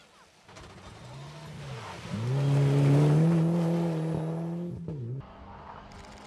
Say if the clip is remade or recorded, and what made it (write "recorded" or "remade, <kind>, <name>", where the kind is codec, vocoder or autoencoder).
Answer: recorded